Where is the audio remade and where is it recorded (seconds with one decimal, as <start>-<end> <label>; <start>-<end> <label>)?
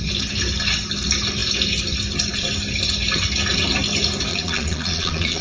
0.0-4.3 recorded; 4.3-5.4 remade